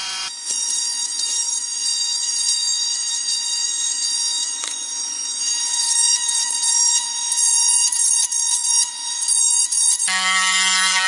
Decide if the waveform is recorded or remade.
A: remade